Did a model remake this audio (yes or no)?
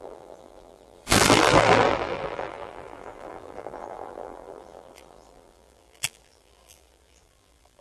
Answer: yes